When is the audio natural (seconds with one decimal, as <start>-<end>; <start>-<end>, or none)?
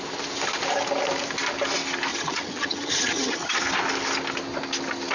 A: 0.0-2.1; 3.6-5.1